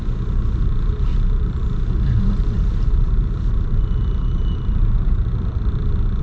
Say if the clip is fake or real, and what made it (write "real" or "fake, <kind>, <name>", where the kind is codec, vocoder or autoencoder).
fake, vocoder, BigVGAN v2